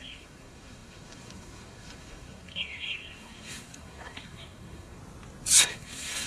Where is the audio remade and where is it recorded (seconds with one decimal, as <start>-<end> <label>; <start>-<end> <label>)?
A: 0.0-5.0 remade; 5.0-5.6 recorded; 5.6-6.3 remade